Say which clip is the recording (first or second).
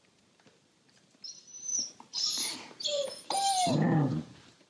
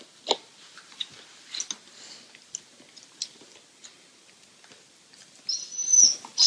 second